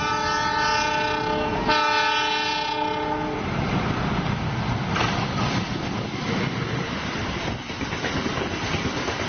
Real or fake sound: real